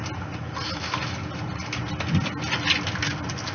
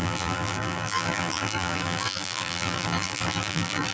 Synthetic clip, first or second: second